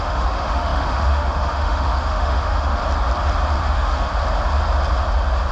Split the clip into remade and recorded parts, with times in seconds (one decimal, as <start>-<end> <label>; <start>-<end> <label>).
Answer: 0.0-2.8 remade; 2.8-3.6 recorded; 3.6-4.1 remade; 4.1-5.5 recorded